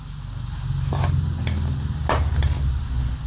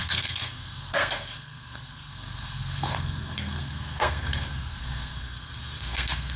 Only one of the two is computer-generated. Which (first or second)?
second